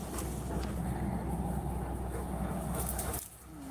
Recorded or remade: recorded